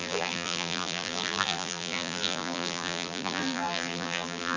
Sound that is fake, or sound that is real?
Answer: fake